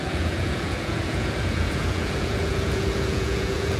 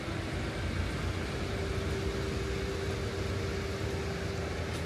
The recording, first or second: second